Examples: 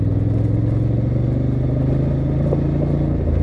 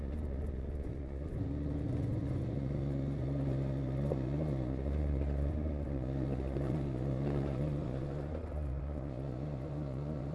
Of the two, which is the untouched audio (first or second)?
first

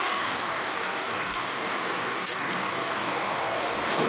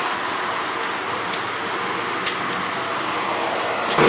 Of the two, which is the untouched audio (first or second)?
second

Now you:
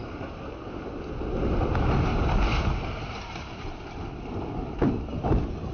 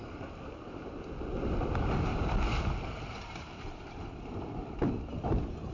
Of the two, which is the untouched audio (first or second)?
first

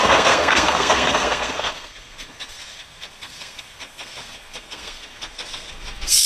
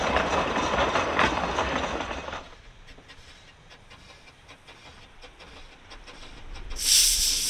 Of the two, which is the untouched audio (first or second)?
second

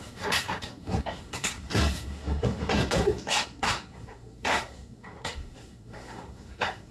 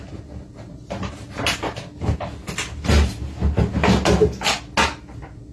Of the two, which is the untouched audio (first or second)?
second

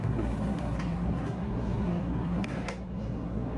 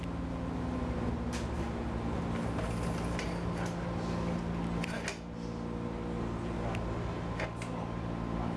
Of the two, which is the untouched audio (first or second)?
second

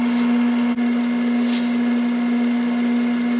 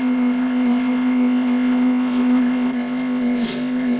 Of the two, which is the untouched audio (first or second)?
first